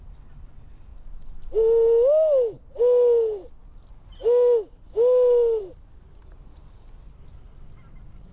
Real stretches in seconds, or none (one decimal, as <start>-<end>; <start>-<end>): 0.0-8.3